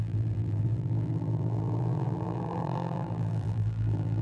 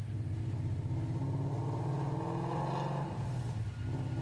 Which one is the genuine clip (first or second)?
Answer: second